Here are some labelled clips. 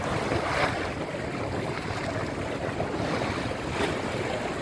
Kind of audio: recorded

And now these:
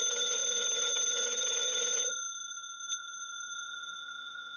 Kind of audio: remade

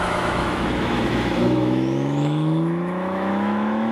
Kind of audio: remade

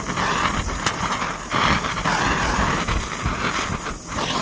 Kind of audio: recorded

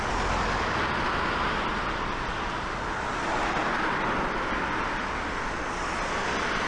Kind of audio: recorded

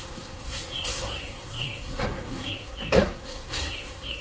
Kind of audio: remade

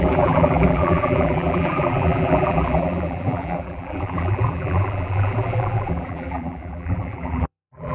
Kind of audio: remade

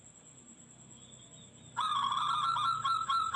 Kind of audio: recorded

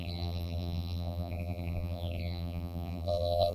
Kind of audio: remade